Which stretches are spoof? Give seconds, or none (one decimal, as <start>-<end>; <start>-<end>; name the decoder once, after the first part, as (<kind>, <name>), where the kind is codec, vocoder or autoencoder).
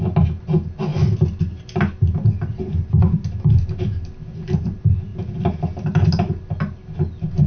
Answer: none